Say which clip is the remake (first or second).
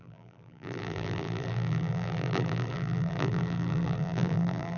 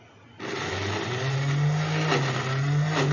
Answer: first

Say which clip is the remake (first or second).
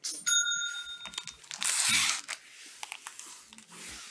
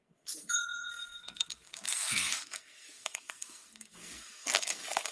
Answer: second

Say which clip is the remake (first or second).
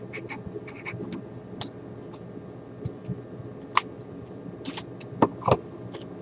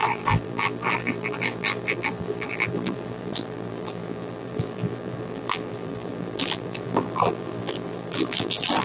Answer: second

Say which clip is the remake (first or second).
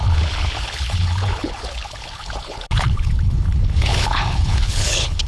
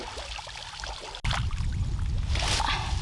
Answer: first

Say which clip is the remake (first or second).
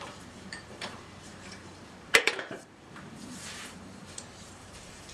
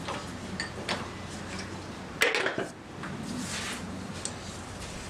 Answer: first